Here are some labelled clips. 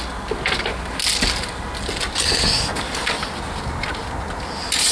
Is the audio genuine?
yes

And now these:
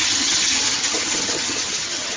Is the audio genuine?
no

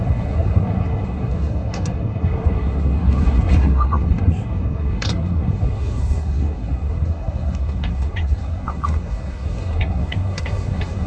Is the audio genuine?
no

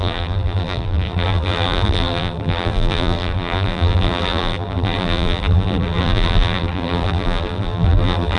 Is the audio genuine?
no